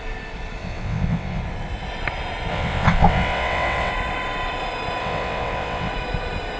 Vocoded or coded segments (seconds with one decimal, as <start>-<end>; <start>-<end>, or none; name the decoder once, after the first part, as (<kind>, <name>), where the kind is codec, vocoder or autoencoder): 0.6-1.4 (vocoder, WaveNeXt); 2.5-3.9; 5.0-5.9